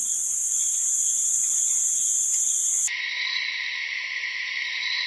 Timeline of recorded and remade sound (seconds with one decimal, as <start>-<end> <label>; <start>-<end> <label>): 0.0-5.1 recorded